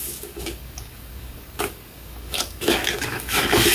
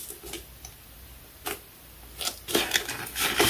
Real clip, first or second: second